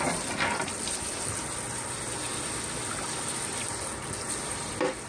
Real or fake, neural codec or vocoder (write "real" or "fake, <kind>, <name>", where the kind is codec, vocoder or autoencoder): real